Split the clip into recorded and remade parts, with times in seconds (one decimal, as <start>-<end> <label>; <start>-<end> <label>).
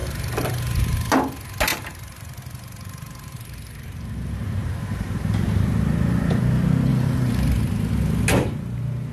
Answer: 0.0-1.1 remade; 1.1-1.7 recorded; 1.7-6.4 remade; 6.4-6.9 recorded; 6.9-7.6 remade; 7.6-9.1 recorded